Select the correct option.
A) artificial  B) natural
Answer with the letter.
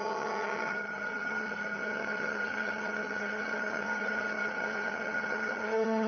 A